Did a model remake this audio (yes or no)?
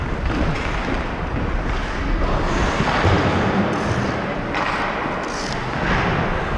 no